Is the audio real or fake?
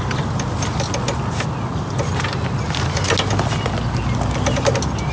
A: real